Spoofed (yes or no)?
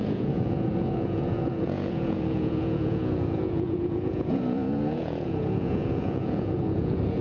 yes